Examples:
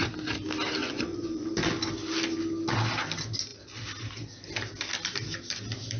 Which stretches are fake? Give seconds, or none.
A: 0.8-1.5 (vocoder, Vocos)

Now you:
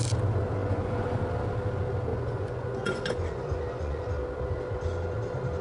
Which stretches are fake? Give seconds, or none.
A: 0.6-1.2 (vocoder, Vocos); 2.1-4.1

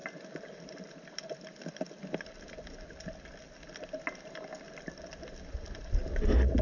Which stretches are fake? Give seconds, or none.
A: none

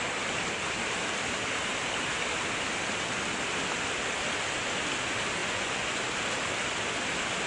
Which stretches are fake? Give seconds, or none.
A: 5.4-6.0 (vocoder, Vocos)